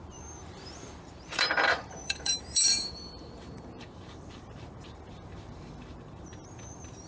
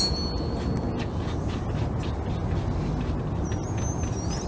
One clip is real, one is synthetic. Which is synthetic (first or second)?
first